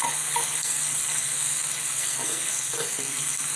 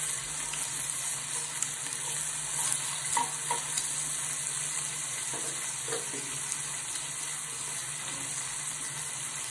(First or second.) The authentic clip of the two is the second